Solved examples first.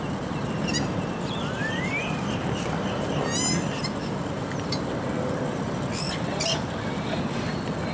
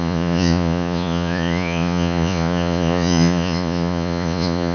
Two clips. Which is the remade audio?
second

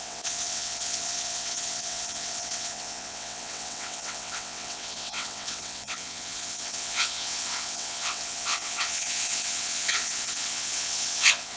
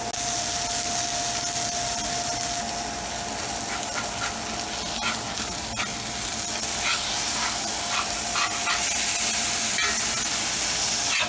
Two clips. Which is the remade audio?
first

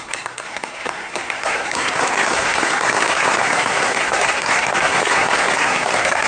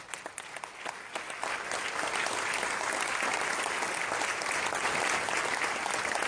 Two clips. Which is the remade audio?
first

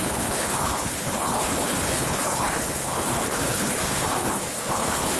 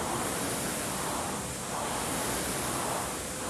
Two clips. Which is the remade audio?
first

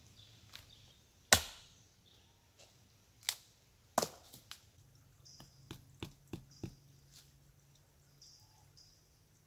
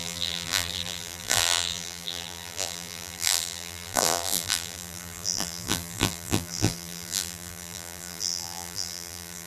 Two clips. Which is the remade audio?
second